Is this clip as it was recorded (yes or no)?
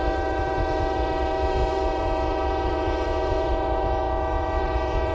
no